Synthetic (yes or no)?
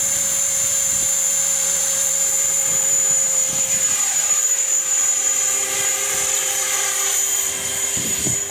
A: yes